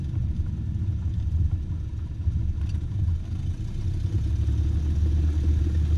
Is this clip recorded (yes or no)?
yes